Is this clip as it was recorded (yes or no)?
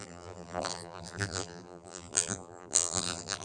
no